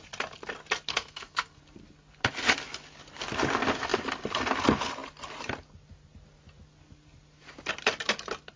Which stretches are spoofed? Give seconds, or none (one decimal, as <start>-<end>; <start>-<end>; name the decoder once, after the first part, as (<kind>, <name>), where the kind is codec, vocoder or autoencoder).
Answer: 0.9-1.6 (codec, SNAC)